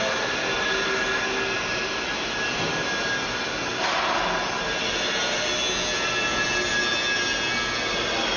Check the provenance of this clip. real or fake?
real